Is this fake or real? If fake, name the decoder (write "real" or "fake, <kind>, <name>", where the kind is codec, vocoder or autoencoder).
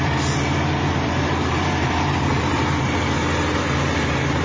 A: fake, vocoder, BigVGAN v2